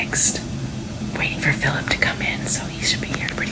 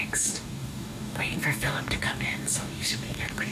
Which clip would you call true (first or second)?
first